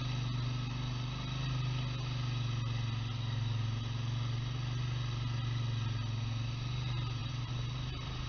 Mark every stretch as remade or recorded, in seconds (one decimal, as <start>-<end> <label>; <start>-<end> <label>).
0.0-7.2 recorded; 7.2-8.3 remade